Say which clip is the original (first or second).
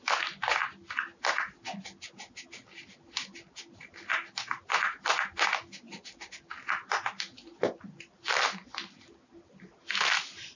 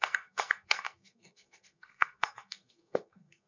first